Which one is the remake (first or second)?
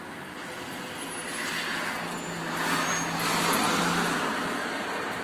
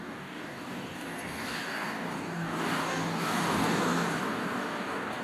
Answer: second